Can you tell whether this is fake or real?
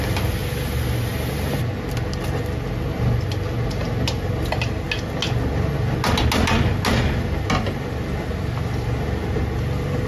real